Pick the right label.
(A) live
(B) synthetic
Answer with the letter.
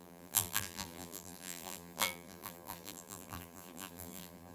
B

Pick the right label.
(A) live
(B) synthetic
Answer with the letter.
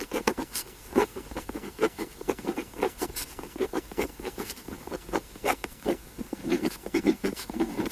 B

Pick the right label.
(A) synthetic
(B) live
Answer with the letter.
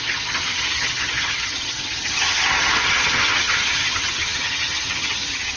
A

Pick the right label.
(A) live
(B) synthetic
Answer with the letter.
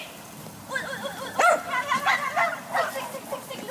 A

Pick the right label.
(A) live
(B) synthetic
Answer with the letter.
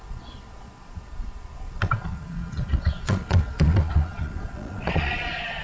B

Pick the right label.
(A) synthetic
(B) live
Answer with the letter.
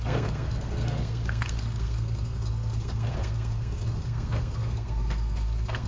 A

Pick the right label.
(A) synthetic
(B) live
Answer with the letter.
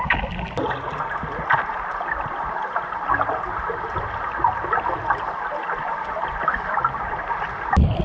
B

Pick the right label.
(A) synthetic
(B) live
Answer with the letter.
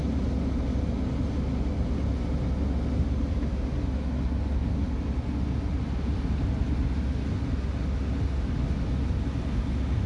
B